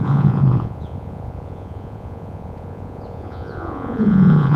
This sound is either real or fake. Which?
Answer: fake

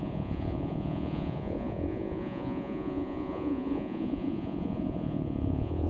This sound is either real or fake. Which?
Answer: fake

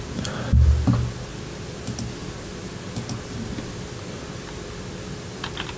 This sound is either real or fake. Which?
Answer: real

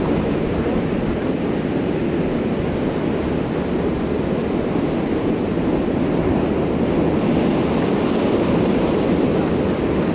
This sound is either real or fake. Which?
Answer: real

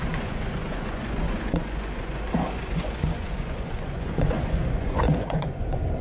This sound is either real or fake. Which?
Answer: fake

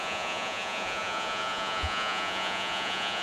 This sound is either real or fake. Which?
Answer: fake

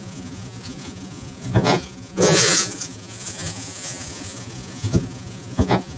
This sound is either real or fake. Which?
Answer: fake